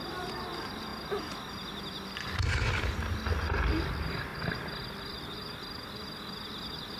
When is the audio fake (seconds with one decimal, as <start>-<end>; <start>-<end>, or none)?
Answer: none